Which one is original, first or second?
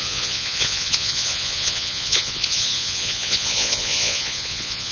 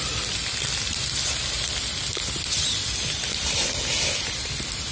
second